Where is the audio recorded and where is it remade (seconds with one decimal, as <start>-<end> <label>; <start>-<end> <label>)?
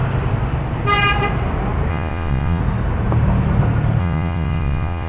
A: 0.0-1.9 recorded; 1.9-2.6 remade; 2.6-4.0 recorded; 4.0-5.1 remade